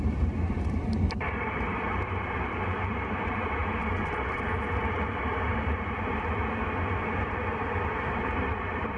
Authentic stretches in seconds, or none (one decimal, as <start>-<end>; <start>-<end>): 3.6-4.1